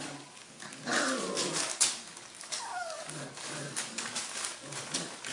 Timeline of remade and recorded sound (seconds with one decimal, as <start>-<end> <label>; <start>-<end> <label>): 0.0-5.3 remade